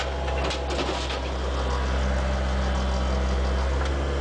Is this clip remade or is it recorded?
recorded